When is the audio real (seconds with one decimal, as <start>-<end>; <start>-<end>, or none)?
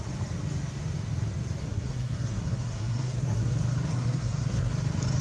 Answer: 0.0-1.6; 3.5-3.9; 4.7-5.2